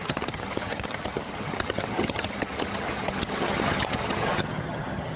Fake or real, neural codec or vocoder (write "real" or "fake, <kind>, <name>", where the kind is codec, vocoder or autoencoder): fake, vocoder, HiFi-GAN